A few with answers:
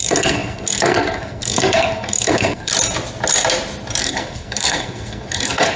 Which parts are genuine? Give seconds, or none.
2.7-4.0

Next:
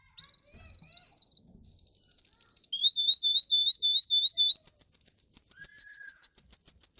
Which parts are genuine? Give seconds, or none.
0.0-3.6; 4.5-5.8; 6.3-7.0